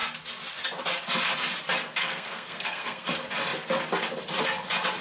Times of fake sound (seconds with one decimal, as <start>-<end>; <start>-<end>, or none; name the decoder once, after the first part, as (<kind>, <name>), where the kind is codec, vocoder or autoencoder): 2.0-3.1 (codec, SNAC)